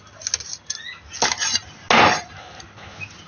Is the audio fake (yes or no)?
no